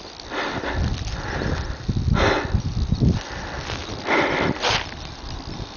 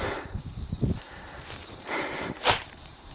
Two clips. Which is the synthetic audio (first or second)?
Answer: second